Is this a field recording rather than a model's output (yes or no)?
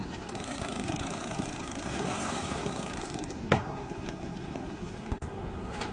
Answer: no